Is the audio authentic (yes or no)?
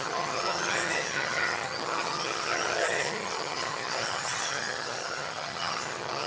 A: no